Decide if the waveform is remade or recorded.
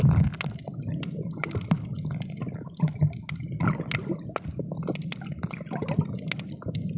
recorded